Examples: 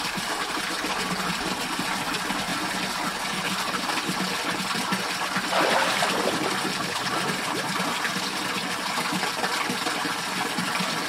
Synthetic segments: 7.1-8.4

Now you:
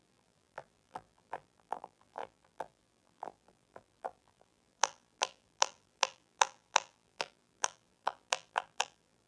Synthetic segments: 0.0-9.3

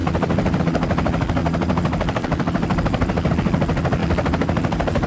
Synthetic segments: 0.0-0.6; 1.4-3.3

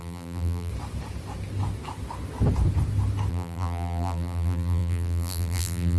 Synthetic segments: 0.0-0.7; 3.3-6.0